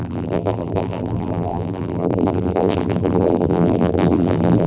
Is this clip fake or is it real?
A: fake